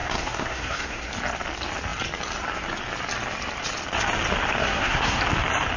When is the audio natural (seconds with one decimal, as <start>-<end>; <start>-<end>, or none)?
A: 1.1-4.6; 5.2-5.8